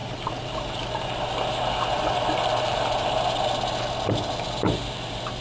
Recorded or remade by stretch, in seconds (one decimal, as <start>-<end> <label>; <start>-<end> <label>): 0.0-1.5 remade; 1.5-5.4 recorded